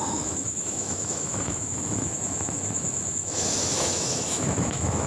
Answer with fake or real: fake